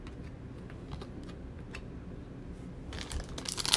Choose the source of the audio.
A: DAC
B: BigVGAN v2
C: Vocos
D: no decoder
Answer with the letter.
D